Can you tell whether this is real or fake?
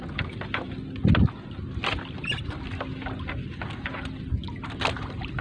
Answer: real